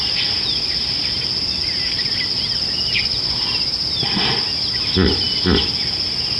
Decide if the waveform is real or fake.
real